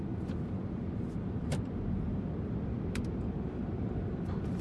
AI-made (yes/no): yes